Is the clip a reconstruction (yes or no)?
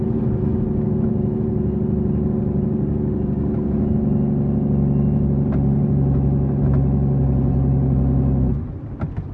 no